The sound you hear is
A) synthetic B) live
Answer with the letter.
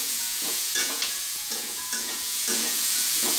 A